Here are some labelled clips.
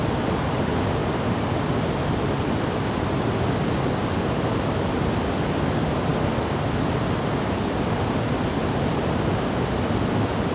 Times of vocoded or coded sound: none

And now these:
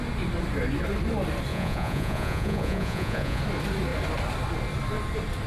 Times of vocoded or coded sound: 1.5-3.4 (vocoder, Vocos)

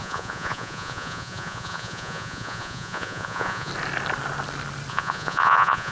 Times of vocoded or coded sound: 0.0-3.7 (vocoder, Vocos); 4.9-5.9

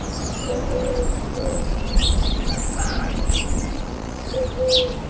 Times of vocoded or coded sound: 1.3-4.4 (vocoder, Vocos)

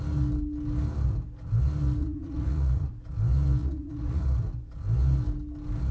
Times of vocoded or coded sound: 2.0-2.9 (vocoder, Vocos); 3.6-4.2

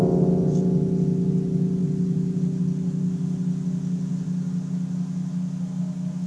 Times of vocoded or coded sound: none

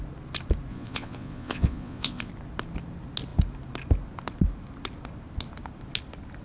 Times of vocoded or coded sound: 0.7-2.3 (vocoder, Vocos)

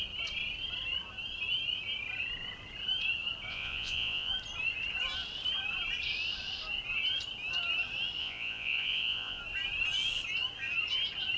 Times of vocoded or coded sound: 3.5-4.3 (vocoder, Vocos); 8.2-9.4